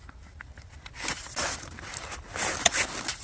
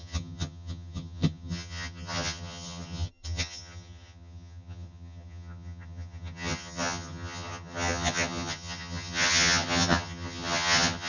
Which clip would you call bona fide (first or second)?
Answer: first